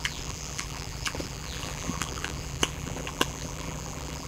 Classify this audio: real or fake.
fake